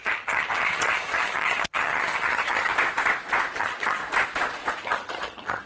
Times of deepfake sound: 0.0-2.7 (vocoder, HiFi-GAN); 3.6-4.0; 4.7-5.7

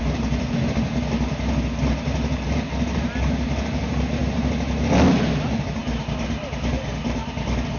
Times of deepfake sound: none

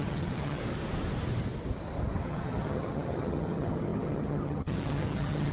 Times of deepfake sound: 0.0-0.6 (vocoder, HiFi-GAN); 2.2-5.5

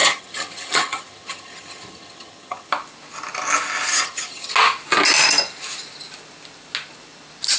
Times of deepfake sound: 0.0-2.7 (vocoder, HiFi-GAN); 3.9-4.5

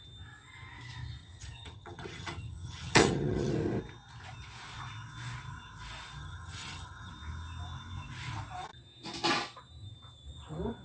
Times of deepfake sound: 1.2-3.5 (vocoder, HiFi-GAN); 6.2-7.1